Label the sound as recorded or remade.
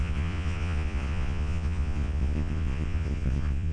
remade